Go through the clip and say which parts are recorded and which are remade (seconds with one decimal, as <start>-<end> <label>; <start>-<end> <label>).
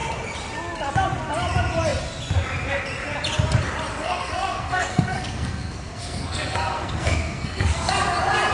0.0-3.9 recorded; 3.9-7.9 remade; 7.9-8.5 recorded